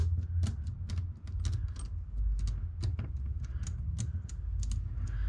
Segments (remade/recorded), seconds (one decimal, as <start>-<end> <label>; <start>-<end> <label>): 0.0-5.3 recorded

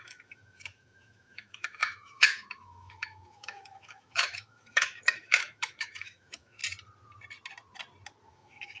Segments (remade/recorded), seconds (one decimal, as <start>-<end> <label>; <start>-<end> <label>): 0.0-6.6 remade; 6.6-8.3 recorded; 8.3-8.8 remade

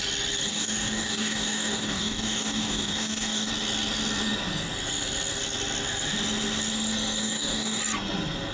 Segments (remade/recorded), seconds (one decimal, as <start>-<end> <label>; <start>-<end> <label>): 0.0-0.5 recorded; 0.5-3.5 remade; 3.5-7.2 recorded; 7.2-7.8 remade; 7.8-8.5 recorded

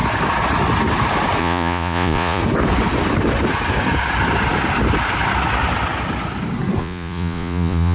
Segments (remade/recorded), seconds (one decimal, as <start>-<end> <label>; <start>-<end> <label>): 0.0-1.4 recorded; 1.4-2.4 remade; 2.4-6.8 recorded; 6.8-7.9 remade

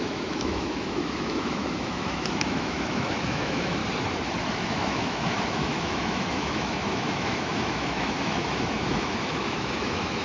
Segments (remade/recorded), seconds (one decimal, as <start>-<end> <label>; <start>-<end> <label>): 0.0-3.8 remade; 3.8-4.5 recorded; 4.5-10.2 remade

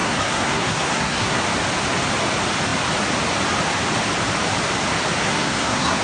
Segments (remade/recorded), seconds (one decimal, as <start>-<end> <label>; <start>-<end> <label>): 0.0-1.4 remade; 1.4-5.2 recorded; 5.2-6.0 remade

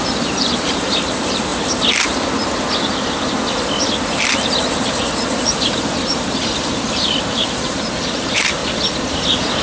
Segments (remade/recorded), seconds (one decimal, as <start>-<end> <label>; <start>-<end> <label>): 0.0-1.5 remade; 1.5-5.4 recorded; 5.4-8.6 remade; 8.6-9.6 recorded